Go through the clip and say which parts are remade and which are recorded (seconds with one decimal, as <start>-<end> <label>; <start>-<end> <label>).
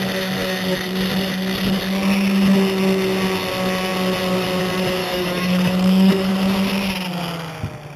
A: 0.0-5.0 recorded; 5.0-6.3 remade; 6.3-8.0 recorded